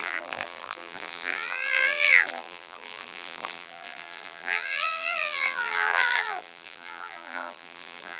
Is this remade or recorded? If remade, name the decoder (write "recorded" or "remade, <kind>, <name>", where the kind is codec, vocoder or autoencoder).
remade, vocoder, BigVGAN v2